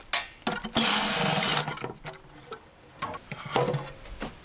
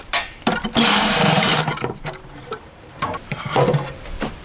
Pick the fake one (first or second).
second